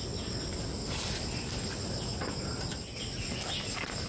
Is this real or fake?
real